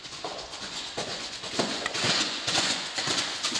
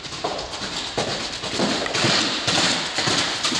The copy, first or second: first